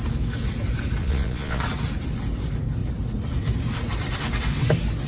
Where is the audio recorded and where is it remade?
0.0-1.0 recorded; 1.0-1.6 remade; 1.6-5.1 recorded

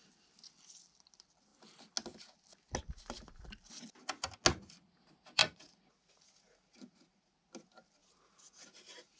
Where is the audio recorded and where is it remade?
0.0-5.4 recorded; 5.4-7.3 remade; 7.3-8.0 recorded; 8.0-9.2 remade

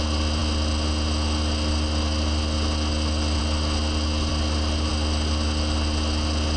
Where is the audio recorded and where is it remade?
0.0-6.6 recorded

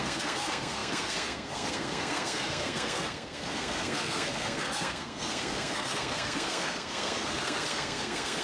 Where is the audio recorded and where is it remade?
0.0-8.4 remade